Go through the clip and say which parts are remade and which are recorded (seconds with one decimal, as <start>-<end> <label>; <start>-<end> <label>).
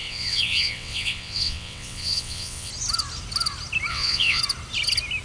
0.0-2.7 remade; 2.7-3.9 recorded; 3.9-4.4 remade; 4.4-5.2 recorded